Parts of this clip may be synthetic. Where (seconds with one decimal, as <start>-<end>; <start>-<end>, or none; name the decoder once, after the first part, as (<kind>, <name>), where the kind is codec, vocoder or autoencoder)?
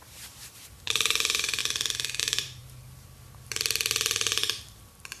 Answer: 0.0-1.6 (vocoder, BigVGAN v2); 2.2-5.2